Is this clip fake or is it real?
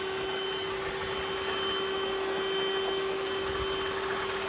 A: real